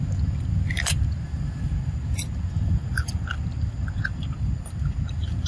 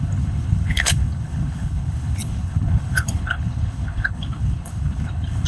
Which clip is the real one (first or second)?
first